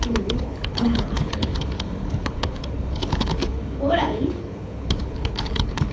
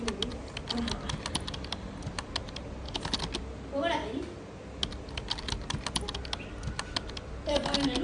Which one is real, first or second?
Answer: second